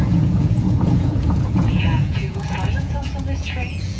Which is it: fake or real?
fake